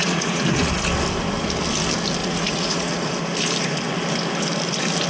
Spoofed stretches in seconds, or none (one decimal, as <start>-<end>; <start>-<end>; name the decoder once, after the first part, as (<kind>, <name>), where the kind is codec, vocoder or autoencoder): 0.0-0.7 (vocoder, Vocos); 2.2-3.1